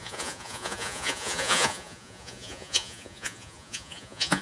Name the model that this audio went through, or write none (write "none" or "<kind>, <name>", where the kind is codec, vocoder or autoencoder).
vocoder, Vocos